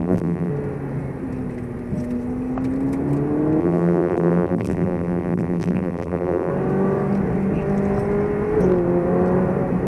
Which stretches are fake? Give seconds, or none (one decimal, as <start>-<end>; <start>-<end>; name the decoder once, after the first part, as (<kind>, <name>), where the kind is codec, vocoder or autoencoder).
0.0-0.5 (vocoder, BigVGAN v2); 3.6-6.5